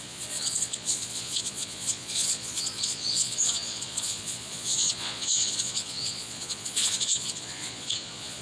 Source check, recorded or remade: remade